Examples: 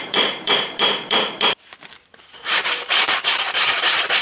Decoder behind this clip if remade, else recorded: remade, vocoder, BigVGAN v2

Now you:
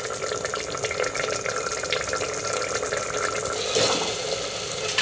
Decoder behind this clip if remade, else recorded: recorded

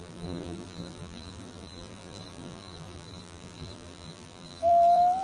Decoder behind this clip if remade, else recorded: remade, vocoder, BigVGAN v2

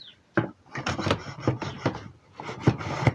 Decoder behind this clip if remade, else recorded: recorded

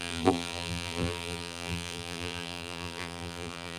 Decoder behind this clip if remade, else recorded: remade, vocoder, BigVGAN v2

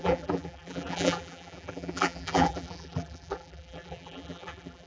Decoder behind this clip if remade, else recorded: remade, vocoder, BigVGAN v2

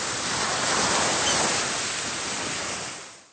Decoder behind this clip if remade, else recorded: recorded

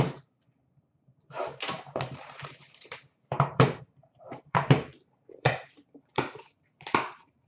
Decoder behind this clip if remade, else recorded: remade, vocoder, BigVGAN v2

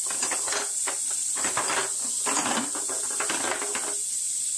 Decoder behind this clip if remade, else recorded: recorded